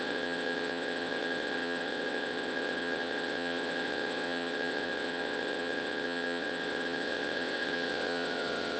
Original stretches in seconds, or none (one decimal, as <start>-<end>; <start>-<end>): none